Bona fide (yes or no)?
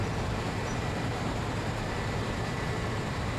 no